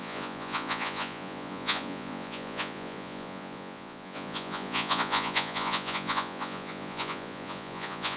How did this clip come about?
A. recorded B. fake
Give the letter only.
B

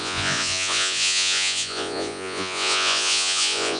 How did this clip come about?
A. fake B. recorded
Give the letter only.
A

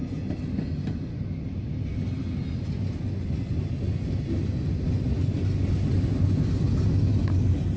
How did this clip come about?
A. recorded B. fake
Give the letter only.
A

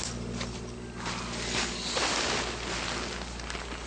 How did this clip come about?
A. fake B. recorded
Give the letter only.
B